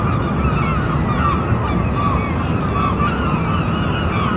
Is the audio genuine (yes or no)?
yes